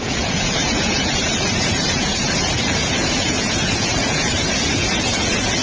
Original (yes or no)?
no